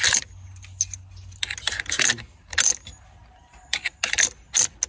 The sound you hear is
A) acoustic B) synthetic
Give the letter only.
A